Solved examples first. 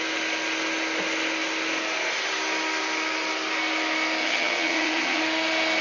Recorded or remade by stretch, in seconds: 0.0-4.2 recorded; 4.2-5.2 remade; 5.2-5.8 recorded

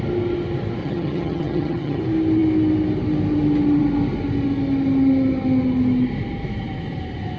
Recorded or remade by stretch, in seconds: 0.0-0.8 recorded; 0.8-2.0 remade; 2.0-7.4 recorded

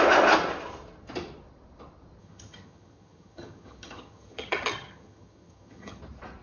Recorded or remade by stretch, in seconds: 0.0-2.2 recorded; 2.2-6.0 remade; 6.0-6.4 recorded

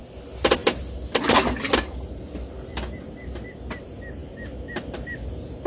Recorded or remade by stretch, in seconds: 0.0-5.7 recorded

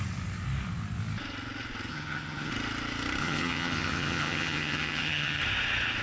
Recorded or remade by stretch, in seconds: 0.0-1.9 recorded; 1.9-2.5 remade; 2.5-3.2 recorded; 3.2-5.4 remade; 5.4-6.0 recorded

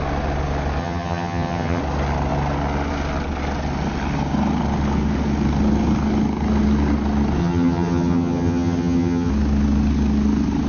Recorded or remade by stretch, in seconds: 0.0-0.8 recorded; 0.8-1.8 remade; 1.8-7.4 recorded; 7.4-9.3 remade; 9.3-10.7 recorded

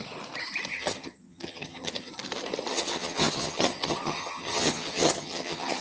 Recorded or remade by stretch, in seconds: 0.0-0.7 recorded; 0.7-2.1 remade; 2.1-2.7 recorded; 2.7-5.8 remade